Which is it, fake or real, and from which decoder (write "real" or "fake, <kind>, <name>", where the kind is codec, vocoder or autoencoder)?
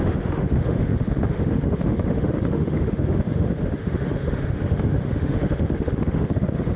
fake, autoencoder, DAC-VAE